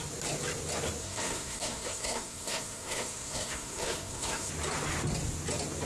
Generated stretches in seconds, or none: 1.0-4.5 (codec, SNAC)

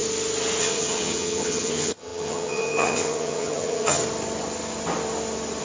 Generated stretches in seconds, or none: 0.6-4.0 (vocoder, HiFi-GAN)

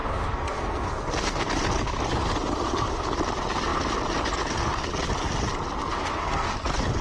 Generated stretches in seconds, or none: 0.0-1.5 (codec, SNAC); 5.8-6.5

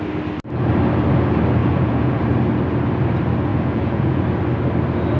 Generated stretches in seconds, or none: 1.6-2.2 (vocoder, Vocos); 3.5-4.2

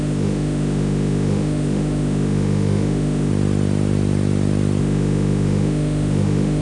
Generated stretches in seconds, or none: 0.0-3.3 (autoencoder, DAC-VAE); 4.8-6.6